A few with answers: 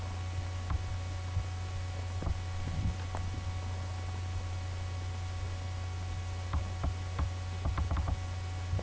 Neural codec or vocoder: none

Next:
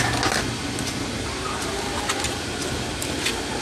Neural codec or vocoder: none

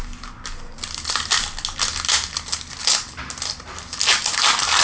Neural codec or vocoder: none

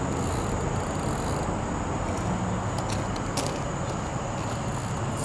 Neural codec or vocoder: none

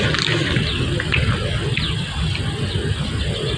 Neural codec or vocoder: none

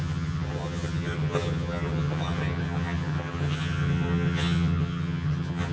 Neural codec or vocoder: vocoder, HiFi-GAN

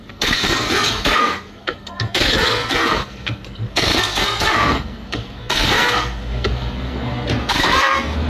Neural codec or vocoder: codec, SNAC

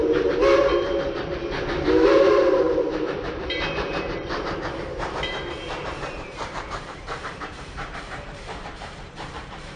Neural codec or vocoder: vocoder, BigVGAN v2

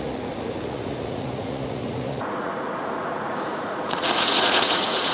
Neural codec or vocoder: vocoder, Vocos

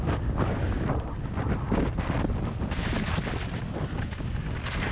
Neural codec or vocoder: none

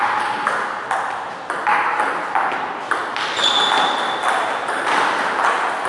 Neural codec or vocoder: none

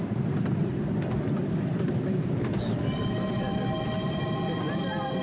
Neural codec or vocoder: none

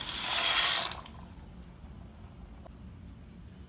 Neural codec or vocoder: none